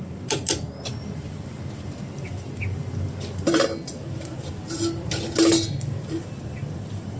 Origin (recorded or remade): recorded